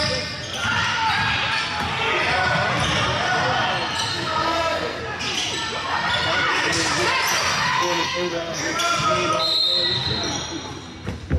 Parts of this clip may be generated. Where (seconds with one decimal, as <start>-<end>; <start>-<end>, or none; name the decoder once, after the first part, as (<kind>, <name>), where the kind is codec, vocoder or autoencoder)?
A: 4.1-5.0 (codec, SNAC); 7.5-8.6